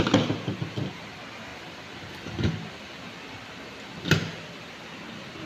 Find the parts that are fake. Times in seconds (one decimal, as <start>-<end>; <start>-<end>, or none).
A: 1.5-3.1